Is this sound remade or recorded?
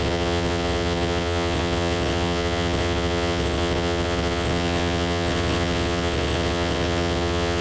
remade